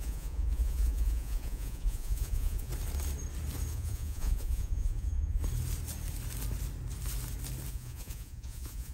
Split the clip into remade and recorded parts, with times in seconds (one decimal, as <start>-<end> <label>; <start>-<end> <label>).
0.0-2.7 remade; 2.7-3.7 recorded; 3.7-5.4 remade; 5.4-7.7 recorded; 7.7-8.9 remade